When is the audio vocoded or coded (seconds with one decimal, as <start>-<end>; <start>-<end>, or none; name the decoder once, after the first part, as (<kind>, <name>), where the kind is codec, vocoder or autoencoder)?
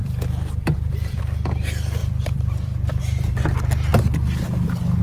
0.0-1.2 (vocoder, BigVGAN v2); 2.0-3.0